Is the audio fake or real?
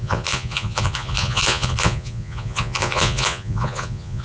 fake